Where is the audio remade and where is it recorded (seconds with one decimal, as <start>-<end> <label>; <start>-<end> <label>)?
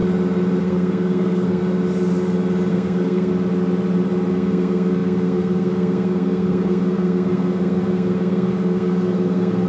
0.0-0.6 recorded; 0.6-1.6 remade; 1.6-2.7 recorded; 2.7-3.3 remade; 3.3-4.3 recorded; 4.3-9.7 remade